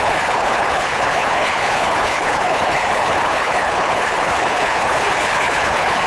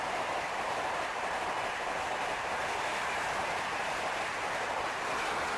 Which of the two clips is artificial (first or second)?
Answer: first